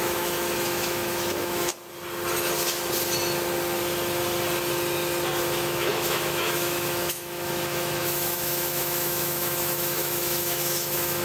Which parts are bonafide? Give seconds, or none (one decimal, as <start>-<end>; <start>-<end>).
1.7-5.4